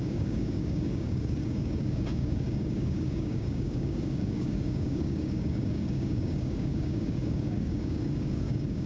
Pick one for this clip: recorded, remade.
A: remade